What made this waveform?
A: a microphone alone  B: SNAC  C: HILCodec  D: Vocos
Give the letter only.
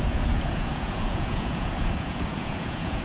D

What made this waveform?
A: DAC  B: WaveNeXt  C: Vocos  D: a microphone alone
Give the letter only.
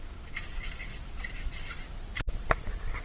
D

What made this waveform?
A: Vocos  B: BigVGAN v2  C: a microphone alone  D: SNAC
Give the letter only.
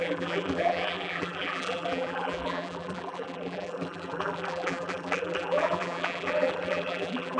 B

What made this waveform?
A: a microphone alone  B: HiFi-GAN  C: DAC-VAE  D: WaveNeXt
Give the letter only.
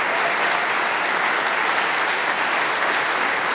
A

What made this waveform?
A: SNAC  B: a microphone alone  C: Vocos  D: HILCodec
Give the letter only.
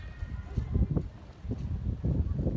B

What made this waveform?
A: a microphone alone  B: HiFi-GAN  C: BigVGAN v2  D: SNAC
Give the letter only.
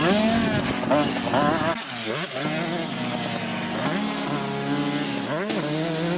A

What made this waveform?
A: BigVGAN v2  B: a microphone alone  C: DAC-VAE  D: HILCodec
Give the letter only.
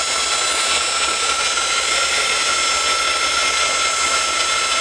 B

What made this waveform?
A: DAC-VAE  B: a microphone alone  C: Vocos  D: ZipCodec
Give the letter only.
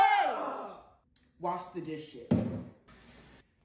B